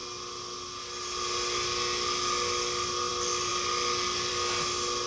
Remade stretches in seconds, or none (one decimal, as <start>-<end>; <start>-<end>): none